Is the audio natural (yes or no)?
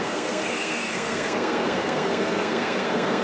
no